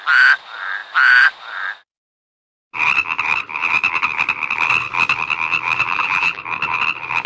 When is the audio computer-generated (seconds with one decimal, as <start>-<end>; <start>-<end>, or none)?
5.9-6.4